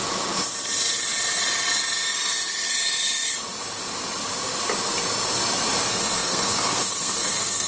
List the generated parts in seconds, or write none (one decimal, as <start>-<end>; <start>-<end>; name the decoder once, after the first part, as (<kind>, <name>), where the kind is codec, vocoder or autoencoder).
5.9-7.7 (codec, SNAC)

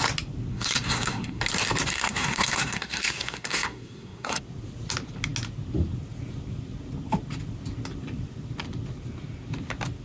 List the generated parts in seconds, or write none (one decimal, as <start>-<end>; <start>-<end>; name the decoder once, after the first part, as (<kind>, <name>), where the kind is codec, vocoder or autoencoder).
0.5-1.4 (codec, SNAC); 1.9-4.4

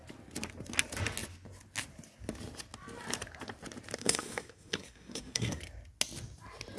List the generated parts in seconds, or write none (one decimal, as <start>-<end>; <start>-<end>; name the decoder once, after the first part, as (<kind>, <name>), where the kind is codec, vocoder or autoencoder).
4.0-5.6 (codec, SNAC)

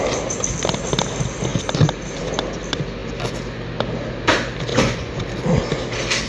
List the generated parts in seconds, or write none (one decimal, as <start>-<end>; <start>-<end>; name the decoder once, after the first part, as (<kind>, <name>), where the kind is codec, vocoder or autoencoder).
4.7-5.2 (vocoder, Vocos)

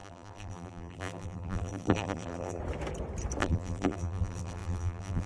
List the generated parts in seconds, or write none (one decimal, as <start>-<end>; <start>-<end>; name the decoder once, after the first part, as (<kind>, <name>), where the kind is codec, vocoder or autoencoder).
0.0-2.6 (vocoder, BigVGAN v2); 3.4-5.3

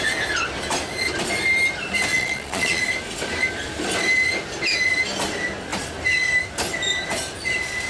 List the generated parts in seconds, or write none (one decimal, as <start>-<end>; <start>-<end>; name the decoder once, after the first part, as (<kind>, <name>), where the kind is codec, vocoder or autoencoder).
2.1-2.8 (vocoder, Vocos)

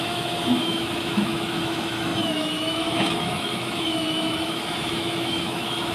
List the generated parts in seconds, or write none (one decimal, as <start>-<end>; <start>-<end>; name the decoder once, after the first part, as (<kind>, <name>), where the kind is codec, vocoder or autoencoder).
0.0-5.9 (autoencoder, DAC-VAE)

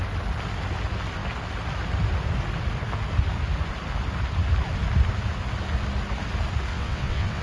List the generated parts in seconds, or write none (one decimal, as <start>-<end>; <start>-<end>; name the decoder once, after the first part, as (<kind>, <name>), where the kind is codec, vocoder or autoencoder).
6.7-7.4 (vocoder, WaveNeXt)